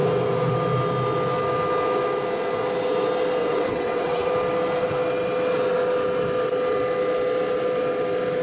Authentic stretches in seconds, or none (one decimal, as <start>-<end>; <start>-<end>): 0.0-3.4; 4.3-8.4

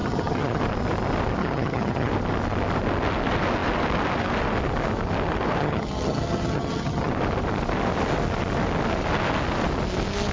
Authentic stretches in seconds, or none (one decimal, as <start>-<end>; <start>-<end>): 0.6-1.4; 2.1-5.6; 7.1-10.3

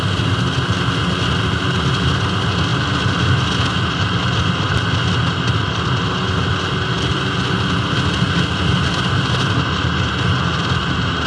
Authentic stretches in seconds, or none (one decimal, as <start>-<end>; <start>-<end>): 0.0-11.3

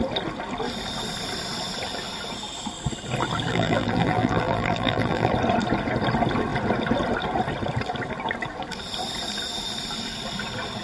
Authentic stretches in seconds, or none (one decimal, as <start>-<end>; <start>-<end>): 0.0-3.5; 5.3-10.8

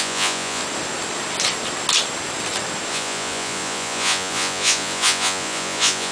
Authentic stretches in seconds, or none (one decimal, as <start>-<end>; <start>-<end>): 0.6-2.9

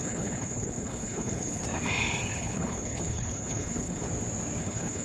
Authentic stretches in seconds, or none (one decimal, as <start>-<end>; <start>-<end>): 1.6-2.3; 4.1-4.6